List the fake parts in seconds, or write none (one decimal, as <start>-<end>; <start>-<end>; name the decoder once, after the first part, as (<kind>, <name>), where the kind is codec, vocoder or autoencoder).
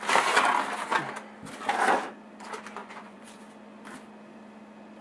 2.8-3.4 (vocoder, Vocos)